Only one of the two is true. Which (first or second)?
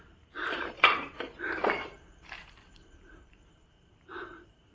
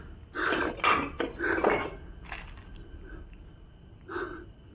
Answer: second